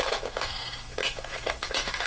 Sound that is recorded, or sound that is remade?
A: remade